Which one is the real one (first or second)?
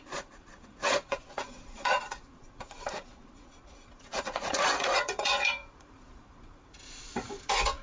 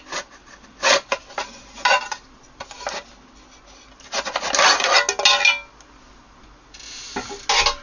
second